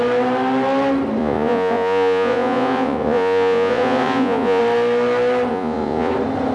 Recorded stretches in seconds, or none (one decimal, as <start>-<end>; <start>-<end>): 0.0-1.2; 4.6-5.5; 6.1-6.5